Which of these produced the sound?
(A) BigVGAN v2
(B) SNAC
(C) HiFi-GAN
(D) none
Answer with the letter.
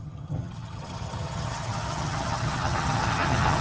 C